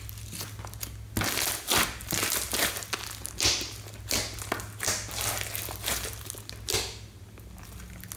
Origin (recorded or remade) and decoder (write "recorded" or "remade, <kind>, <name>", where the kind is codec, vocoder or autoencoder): recorded